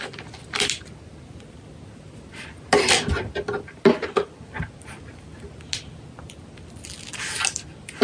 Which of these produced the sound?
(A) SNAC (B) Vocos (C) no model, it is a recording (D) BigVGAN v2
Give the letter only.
C